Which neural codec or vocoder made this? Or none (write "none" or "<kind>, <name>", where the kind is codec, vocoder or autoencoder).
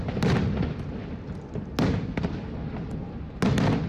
none